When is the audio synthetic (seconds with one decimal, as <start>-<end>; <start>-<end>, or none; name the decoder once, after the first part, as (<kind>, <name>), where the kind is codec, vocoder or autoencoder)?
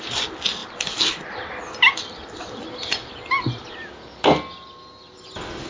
none